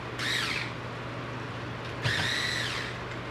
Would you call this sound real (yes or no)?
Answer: yes